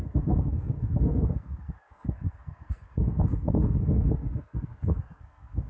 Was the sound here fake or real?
fake